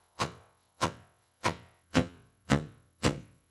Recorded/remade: remade